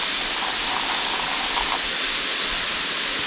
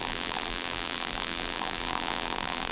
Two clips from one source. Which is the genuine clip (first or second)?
first